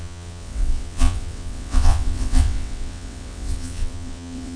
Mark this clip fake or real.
fake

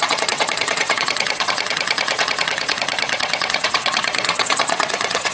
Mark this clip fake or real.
fake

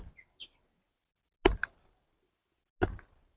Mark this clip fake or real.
real